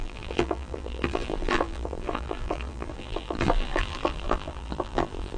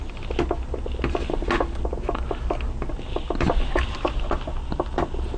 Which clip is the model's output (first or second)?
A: first